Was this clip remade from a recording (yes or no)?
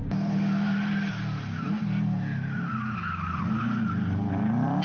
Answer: no